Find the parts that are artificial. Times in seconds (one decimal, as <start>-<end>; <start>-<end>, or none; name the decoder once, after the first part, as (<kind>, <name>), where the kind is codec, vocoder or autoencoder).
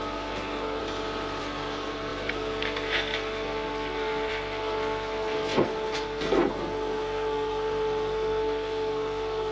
0.0-0.8 (codec, SNAC); 1.4-9.5